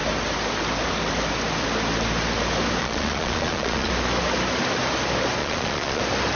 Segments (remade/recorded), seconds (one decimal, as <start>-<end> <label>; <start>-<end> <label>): 0.0-2.8 recorded; 2.8-3.9 remade; 3.9-5.4 recorded; 5.4-6.0 remade; 6.0-6.4 recorded